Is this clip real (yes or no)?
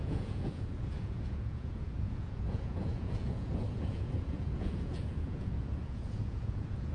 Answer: no